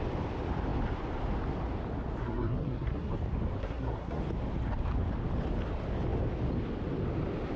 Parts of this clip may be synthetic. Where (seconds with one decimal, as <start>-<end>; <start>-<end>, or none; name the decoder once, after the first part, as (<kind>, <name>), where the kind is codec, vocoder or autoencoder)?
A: 2.2-3.1 (codec, SNAC); 3.6-4.2